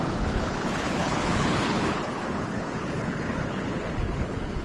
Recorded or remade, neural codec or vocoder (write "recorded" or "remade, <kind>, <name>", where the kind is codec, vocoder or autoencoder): remade, codec, HILCodec